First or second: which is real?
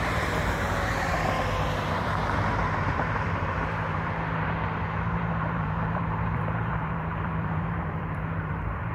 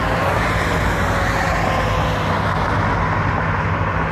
second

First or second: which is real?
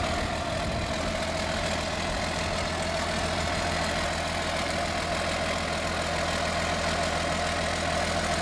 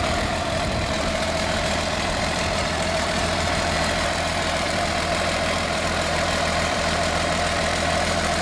first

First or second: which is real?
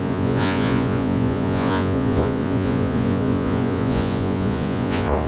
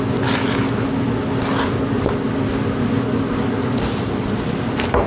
second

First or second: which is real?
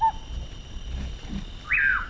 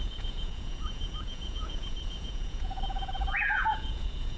first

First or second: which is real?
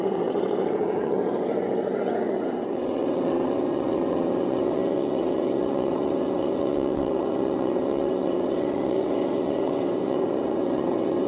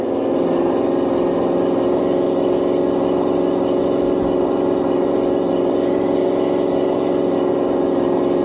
second